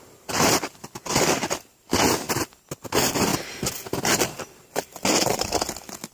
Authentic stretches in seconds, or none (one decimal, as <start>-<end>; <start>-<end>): 0.0-6.1